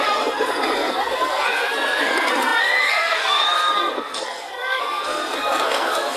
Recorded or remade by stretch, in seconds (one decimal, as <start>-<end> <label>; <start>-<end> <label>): 0.0-6.2 remade